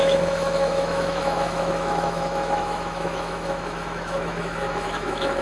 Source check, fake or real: fake